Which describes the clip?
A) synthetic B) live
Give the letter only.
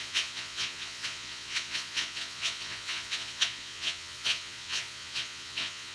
A